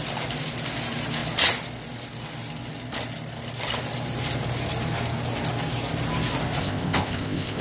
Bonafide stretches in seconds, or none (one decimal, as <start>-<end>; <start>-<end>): 0.0-6.6